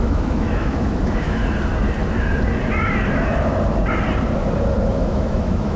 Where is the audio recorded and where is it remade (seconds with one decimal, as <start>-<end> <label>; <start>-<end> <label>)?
0.0-1.4 remade; 1.4-4.9 recorded; 4.9-5.8 remade